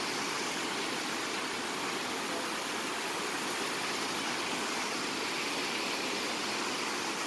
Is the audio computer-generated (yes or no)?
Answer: no